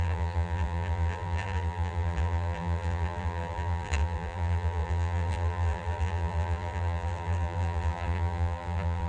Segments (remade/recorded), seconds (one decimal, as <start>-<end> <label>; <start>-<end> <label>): 0.0-9.1 remade